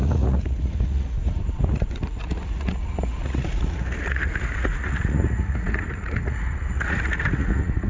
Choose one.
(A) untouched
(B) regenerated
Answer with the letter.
B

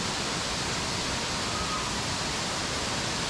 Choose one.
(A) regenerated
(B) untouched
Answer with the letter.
B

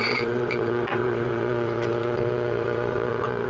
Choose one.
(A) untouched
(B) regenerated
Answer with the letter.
B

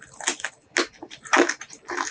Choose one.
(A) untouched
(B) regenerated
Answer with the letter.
A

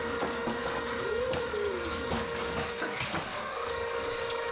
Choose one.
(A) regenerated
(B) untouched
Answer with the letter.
A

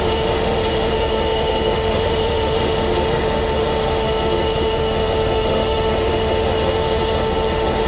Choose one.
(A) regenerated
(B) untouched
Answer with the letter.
A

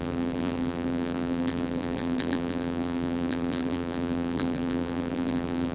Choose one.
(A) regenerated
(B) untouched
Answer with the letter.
A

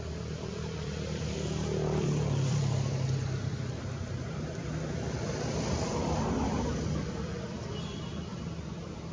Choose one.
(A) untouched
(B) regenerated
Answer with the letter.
B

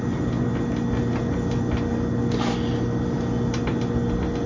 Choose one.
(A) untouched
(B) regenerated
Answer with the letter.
A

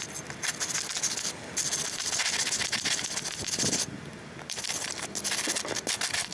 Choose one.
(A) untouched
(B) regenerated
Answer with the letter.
A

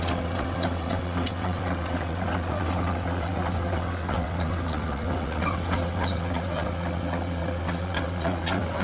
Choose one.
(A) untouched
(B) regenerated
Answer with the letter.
B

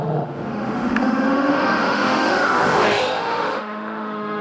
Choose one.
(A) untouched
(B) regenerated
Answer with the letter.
B